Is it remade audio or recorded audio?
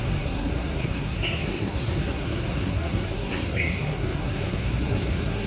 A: remade